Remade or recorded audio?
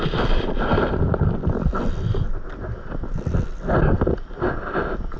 recorded